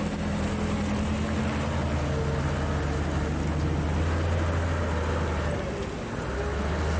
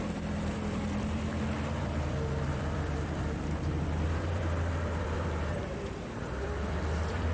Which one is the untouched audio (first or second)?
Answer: first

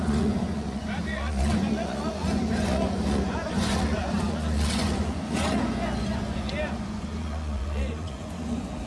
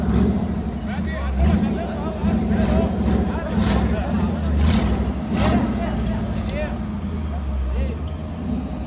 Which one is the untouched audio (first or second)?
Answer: second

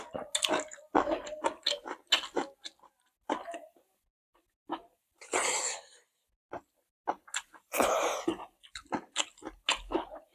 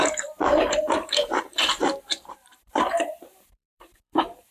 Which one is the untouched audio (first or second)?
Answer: first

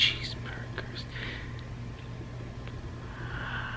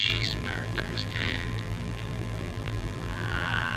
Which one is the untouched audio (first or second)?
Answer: first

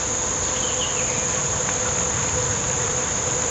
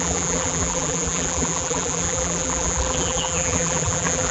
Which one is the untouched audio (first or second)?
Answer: first